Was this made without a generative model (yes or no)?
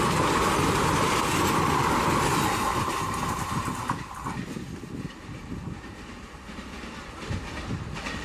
yes